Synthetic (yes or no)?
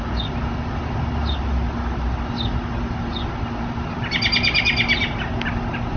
no